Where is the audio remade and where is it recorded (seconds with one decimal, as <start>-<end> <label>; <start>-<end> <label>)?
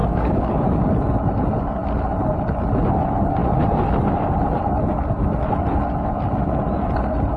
0.0-0.6 remade; 0.6-7.4 recorded